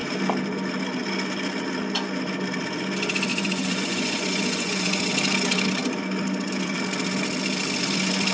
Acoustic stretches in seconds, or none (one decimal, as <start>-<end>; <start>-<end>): 0.0-3.3; 5.1-8.3